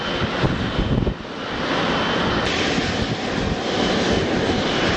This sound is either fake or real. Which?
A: real